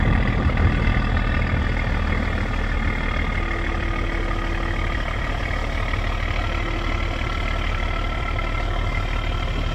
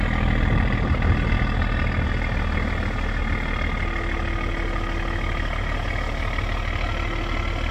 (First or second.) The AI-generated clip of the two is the first